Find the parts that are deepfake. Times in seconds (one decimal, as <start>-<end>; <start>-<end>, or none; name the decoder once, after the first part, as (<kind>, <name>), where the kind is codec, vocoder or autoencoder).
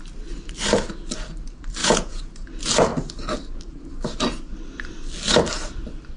1.8-2.3 (vocoder, Vocos)